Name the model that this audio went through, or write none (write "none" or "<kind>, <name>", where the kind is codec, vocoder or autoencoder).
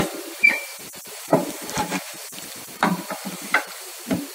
vocoder, BigVGAN v2